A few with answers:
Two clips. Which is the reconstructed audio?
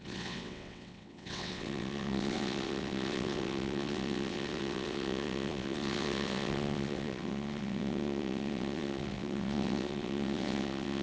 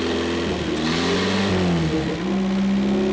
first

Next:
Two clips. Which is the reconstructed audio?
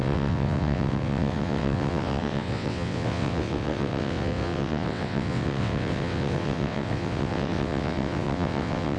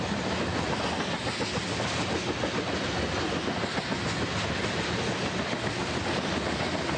first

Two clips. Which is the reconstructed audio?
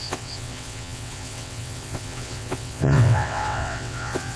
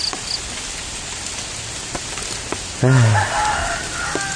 first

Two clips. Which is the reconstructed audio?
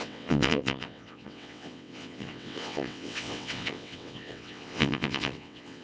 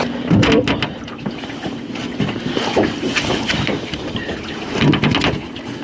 first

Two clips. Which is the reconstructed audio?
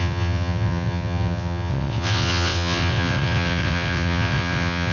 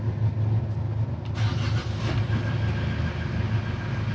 first